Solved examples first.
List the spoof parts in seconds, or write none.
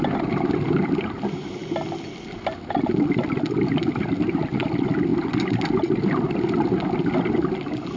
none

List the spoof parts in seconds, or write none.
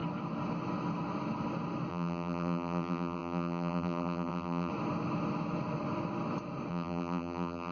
1.9-4.7 (vocoder, BigVGAN v2); 6.7-7.7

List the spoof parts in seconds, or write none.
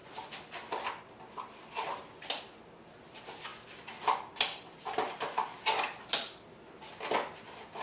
none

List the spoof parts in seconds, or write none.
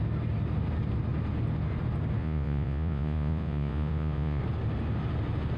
2.2-4.4 (vocoder, Vocos)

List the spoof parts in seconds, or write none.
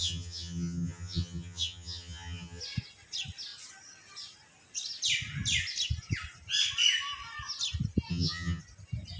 0.0-2.6 (vocoder, HiFi-GAN); 8.1-8.6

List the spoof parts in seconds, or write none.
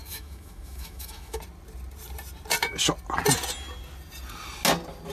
0.0-1.4 (autoencoder, DAC-VAE)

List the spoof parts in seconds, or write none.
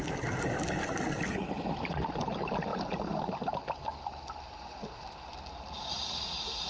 none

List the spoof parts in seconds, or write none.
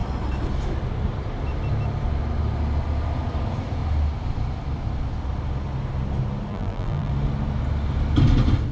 6.5-7.1 (vocoder, BigVGAN v2)